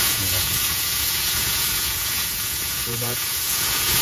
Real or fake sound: fake